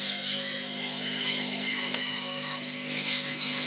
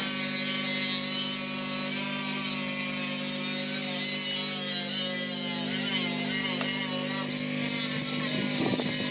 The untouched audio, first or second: second